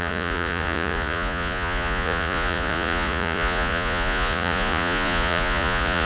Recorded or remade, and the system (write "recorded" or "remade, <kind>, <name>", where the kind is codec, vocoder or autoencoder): remade, vocoder, Vocos